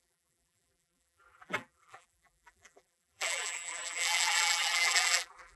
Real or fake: fake